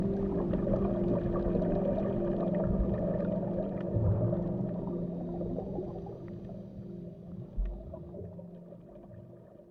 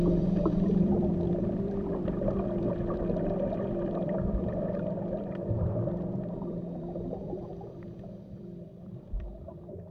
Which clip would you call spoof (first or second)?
second